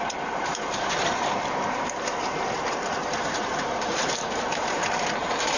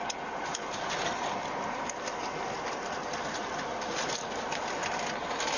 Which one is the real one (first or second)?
second